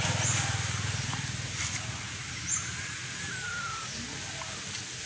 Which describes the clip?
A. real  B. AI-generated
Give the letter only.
A